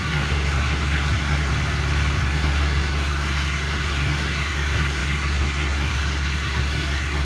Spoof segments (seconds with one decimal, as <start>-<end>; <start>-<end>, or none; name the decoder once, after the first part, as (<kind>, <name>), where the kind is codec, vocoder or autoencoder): 0.0-1.5 (codec, SNAC); 2.2-7.2